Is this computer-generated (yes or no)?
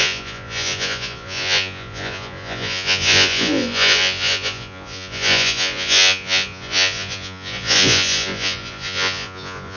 yes